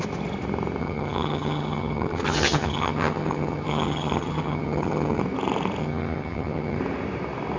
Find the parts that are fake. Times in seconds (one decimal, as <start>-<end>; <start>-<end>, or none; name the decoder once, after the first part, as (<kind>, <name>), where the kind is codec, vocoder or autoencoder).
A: 0.8-5.2 (vocoder, HiFi-GAN); 5.8-6.8